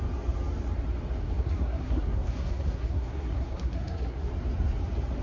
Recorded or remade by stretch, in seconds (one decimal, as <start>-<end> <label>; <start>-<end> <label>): 0.0-1.2 recorded; 1.2-4.3 remade; 4.3-5.2 recorded